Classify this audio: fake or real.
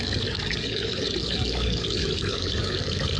fake